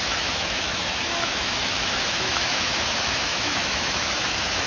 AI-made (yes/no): yes